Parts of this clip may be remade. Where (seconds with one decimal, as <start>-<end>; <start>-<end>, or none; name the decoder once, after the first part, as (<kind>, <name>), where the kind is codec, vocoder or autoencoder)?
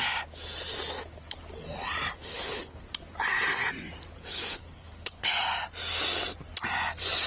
2.3-2.8 (codec, HILCodec); 4.3-5.3